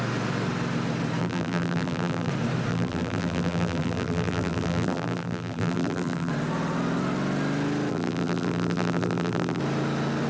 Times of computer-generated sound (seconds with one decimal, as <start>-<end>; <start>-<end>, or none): 1.2-2.3; 2.7-6.3; 7.9-9.6